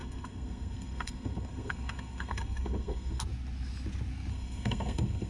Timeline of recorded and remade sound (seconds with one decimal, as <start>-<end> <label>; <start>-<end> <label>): 0.0-3.2 remade; 3.2-4.3 recorded; 4.3-5.3 remade